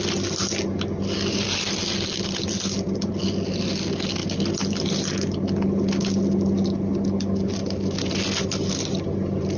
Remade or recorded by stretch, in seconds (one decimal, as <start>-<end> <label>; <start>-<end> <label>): 0.0-9.6 recorded